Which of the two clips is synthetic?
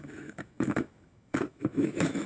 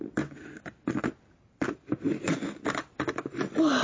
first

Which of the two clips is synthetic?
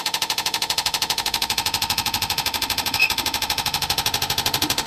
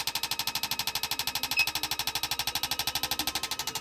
first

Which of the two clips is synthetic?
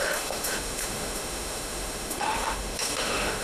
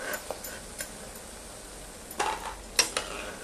first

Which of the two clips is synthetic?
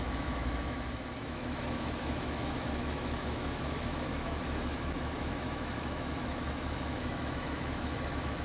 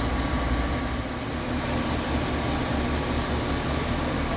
first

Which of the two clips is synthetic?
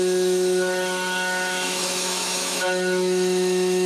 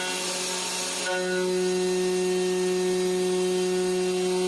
first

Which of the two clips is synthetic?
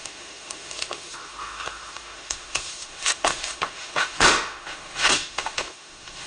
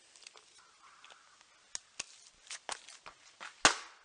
first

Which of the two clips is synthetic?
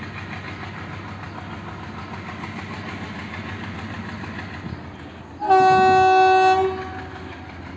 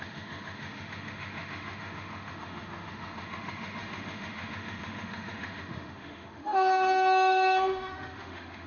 second